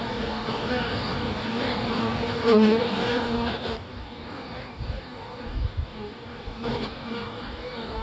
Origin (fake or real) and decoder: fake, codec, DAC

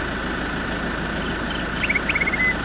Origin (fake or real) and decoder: real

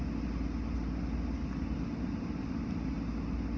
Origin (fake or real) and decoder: real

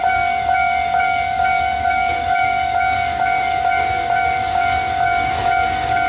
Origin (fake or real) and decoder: fake, codec, DAC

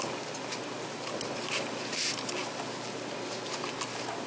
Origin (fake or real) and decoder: real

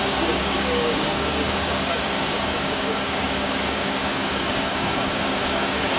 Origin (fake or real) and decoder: fake, codec, DAC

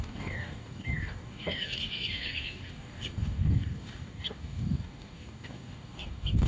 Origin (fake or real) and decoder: fake, codec, DAC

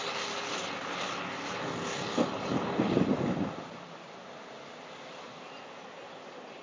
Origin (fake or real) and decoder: real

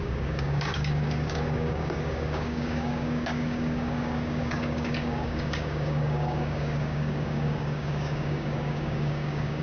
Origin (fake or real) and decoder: fake, codec, DAC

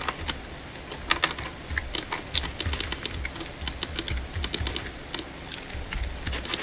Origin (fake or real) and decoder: real